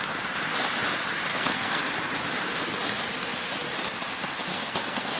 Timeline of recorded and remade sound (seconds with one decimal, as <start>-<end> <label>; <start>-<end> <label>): 0.0-1.3 recorded; 1.3-1.8 remade; 1.8-4.5 recorded; 4.5-5.2 remade